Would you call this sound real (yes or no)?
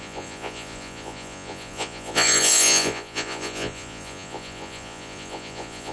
no